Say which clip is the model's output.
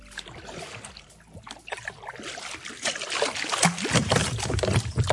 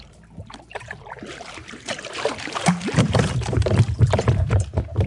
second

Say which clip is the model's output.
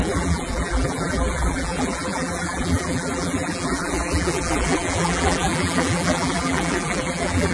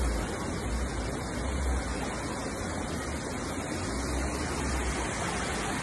first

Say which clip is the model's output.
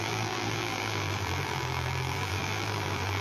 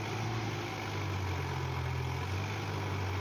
first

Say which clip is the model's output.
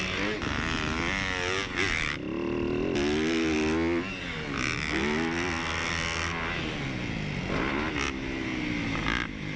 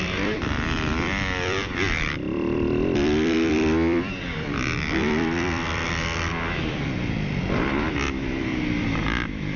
second